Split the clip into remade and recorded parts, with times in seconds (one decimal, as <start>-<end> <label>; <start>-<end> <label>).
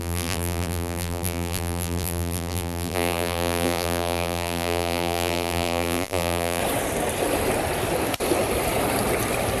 0.0-6.6 remade; 6.6-9.6 recorded